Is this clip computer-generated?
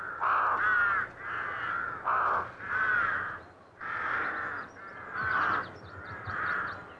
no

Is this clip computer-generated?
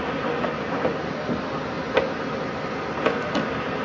no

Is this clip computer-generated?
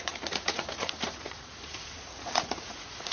yes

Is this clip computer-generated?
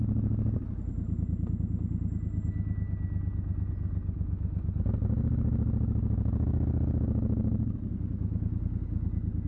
no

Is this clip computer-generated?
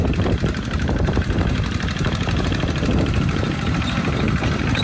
yes